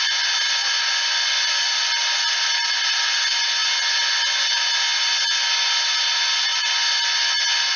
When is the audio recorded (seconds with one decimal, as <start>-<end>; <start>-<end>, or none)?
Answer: 0.0-7.8